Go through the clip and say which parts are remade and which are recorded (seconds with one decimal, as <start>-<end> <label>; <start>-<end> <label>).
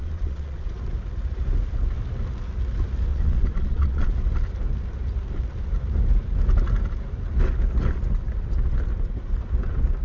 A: 0.0-0.8 remade; 0.8-3.1 recorded; 3.1-4.1 remade; 4.1-10.0 recorded